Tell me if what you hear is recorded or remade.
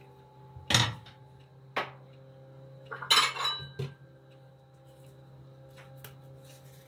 recorded